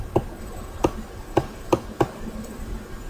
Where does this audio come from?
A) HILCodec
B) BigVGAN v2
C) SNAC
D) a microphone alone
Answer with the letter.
D